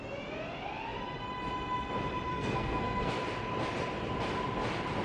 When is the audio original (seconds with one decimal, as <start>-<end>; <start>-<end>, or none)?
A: 0.0-2.3; 3.1-5.0